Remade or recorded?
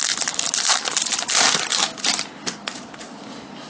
recorded